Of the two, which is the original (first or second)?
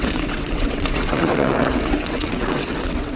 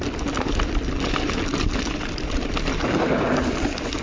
second